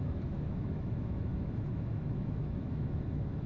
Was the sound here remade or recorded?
remade